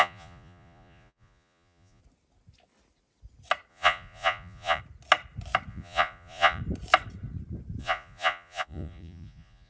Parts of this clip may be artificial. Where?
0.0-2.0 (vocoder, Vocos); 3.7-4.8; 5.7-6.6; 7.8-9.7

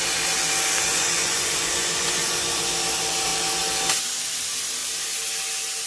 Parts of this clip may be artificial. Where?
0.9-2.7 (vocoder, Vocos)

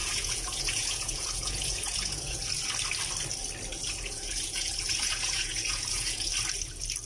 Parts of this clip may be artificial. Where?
0.0-2.5 (vocoder, Vocos); 3.7-6.3

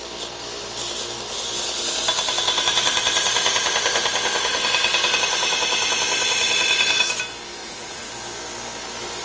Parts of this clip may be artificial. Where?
7.6-8.1 (vocoder, Vocos)

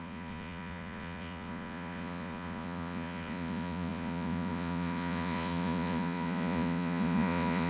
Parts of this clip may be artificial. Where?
0.0-7.7 (vocoder, Vocos)